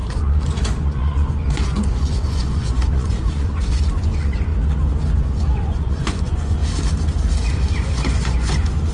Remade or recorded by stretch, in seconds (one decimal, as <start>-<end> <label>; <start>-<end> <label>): 0.0-4.5 remade; 4.5-5.2 recorded; 5.2-6.6 remade; 6.6-7.5 recorded; 7.5-8.9 remade